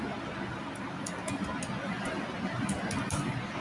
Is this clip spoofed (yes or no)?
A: no